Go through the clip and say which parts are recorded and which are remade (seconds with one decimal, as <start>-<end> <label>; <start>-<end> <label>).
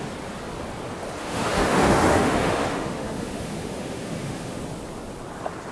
0.0-1.2 recorded; 1.2-4.6 remade; 4.6-5.7 recorded